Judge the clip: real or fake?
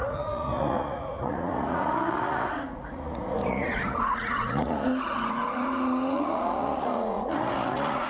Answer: fake